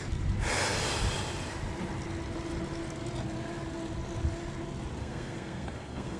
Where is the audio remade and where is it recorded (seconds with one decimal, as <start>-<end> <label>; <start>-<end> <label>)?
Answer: 0.0-5.0 recorded; 5.0-6.2 remade